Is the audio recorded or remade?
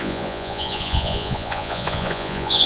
remade